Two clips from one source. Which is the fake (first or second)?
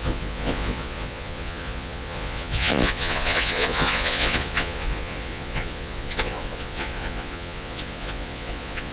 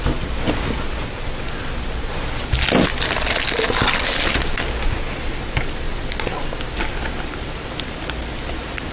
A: first